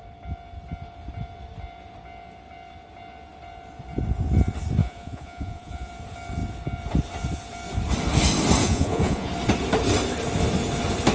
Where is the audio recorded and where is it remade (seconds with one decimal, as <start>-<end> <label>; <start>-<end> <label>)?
0.0-4.8 recorded; 4.8-5.9 remade; 5.9-8.6 recorded; 8.6-9.3 remade; 9.3-11.1 recorded